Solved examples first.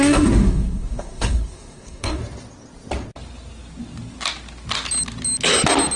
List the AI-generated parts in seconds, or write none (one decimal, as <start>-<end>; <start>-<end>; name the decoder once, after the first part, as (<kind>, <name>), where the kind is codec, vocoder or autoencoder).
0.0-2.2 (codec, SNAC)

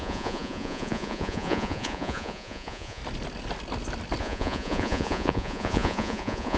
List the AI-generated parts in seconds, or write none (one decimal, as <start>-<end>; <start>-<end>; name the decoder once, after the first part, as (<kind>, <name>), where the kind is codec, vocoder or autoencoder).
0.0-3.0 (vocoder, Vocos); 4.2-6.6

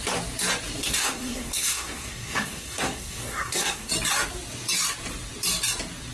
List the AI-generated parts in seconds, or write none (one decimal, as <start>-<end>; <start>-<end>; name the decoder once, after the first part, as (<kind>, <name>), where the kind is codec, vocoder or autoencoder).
0.8-3.9 (codec, SNAC)

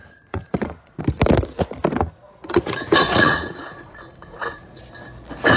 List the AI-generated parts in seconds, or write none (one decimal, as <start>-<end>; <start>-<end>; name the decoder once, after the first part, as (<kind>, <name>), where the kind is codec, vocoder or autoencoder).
0.0-1.0 (vocoder, Vocos); 2.4-4.8